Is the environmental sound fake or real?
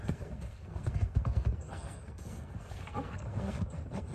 fake